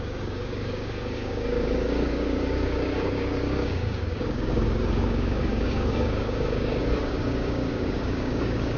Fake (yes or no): yes